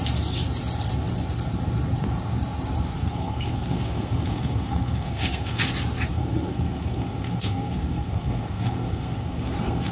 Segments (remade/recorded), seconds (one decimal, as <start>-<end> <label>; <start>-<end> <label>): 0.0-3.0 recorded; 3.0-5.6 remade; 5.6-6.1 recorded; 6.1-9.9 remade